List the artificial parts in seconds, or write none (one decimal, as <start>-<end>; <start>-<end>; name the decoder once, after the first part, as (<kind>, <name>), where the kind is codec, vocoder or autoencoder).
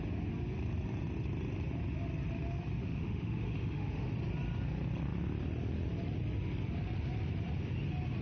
2.8-4.1 (autoencoder, DAC-VAE)